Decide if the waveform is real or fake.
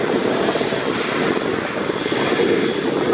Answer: real